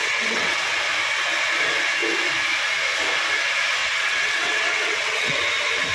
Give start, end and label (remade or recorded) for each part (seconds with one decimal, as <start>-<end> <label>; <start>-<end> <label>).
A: 0.0-0.6 remade; 0.6-3.8 recorded; 3.8-5.4 remade; 5.4-5.9 recorded